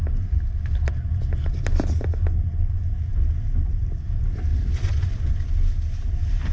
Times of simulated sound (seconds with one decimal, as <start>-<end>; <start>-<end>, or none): 4.5-5.3